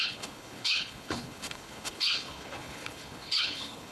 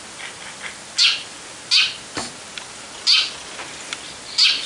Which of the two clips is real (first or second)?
second